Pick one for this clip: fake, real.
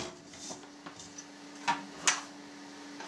real